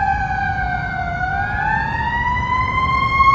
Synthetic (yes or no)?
no